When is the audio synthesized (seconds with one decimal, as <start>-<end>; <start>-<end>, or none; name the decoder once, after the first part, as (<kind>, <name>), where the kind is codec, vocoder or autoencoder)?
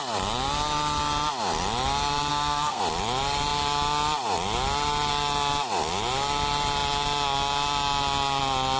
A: 2.3-2.8 (codec, SNAC)